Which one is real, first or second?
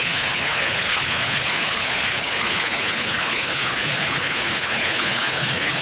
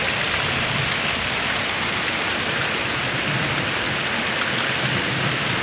second